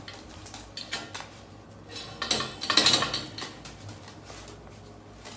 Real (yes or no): yes